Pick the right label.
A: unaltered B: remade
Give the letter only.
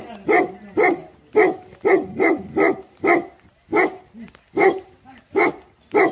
A